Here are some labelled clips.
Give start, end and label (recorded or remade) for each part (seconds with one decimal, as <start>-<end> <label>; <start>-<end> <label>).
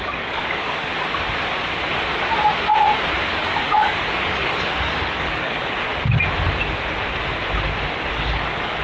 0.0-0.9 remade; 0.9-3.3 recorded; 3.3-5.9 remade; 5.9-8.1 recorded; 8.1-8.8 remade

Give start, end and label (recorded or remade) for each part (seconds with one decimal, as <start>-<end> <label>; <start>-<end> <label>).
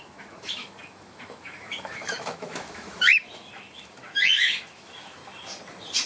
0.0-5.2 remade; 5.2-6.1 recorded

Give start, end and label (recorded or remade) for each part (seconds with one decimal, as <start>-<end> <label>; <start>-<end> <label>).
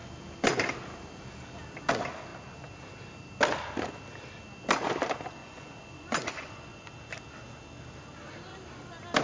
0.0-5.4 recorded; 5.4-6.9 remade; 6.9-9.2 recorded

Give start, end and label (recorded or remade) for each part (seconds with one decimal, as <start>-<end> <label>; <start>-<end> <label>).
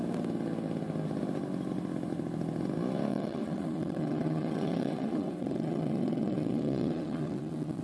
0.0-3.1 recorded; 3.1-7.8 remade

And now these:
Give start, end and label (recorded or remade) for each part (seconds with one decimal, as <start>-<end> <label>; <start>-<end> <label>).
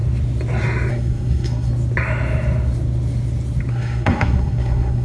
0.0-0.9 recorded; 0.9-1.7 remade; 1.7-3.7 recorded; 3.7-5.0 remade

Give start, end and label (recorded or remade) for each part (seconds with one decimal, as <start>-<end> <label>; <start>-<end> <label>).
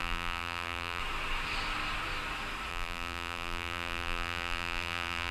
0.0-1.0 remade; 1.0-2.7 recorded; 2.7-5.3 remade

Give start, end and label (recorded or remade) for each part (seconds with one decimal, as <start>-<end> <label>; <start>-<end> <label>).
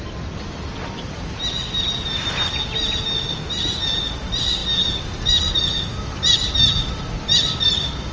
0.0-8.1 recorded